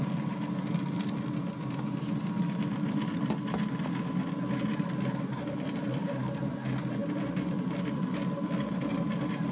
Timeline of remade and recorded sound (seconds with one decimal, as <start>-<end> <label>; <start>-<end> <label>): 0.0-9.5 recorded